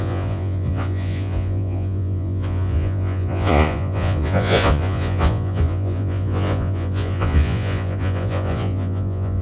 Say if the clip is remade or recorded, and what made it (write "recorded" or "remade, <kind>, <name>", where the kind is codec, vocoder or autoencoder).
remade, vocoder, Vocos